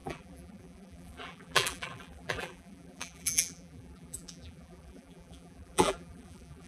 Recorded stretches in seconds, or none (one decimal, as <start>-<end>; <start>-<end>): none